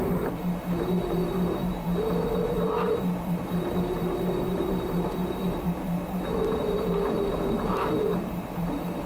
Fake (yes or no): yes